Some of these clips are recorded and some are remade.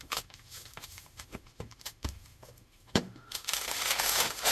remade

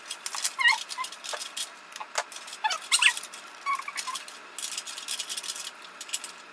recorded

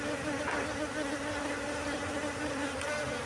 recorded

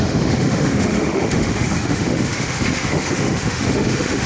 remade